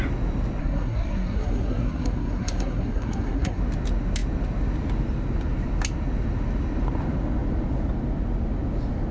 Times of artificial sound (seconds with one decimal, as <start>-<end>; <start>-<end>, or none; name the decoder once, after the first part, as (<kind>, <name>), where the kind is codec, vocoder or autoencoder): 0.6-3.6 (codec, SNAC)